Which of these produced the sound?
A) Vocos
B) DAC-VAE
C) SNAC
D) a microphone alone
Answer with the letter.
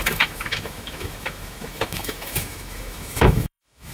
B